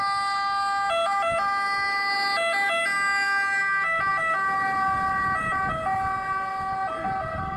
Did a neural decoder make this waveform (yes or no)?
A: no